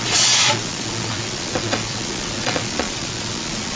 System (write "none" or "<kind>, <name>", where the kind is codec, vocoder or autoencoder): vocoder, Vocos